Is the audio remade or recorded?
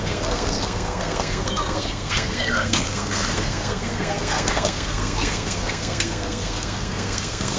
remade